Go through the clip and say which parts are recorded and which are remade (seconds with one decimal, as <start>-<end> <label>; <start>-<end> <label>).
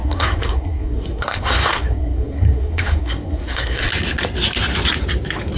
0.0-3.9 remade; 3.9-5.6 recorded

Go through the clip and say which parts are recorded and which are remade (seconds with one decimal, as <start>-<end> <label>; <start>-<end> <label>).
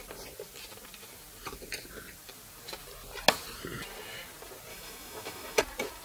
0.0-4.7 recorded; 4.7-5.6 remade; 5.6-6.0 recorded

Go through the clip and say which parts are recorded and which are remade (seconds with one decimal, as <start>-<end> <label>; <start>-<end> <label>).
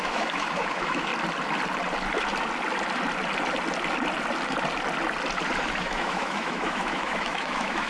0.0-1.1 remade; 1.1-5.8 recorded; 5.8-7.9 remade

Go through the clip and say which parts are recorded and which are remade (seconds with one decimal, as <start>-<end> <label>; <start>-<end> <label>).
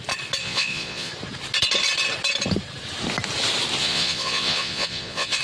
0.0-0.4 recorded; 0.4-1.1 remade; 1.1-3.8 recorded; 3.8-5.4 remade